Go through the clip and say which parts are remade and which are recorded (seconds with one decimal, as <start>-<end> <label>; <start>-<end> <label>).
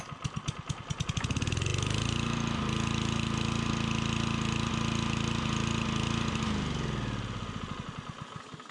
0.0-8.7 recorded